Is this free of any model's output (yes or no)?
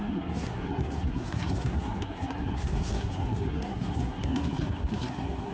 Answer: no